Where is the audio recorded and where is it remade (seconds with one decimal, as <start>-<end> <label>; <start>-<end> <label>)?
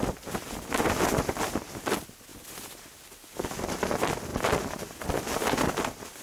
0.0-6.2 recorded